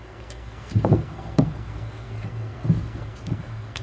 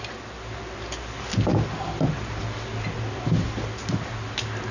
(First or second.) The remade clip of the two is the first